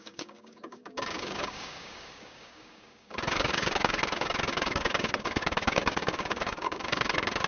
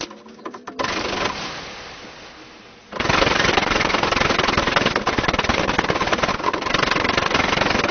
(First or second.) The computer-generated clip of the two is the first